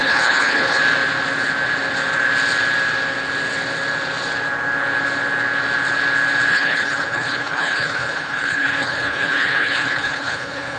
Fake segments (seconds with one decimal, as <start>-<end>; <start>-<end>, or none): 0.0-0.8; 6.5-10.8